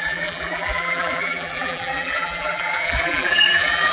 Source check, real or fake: fake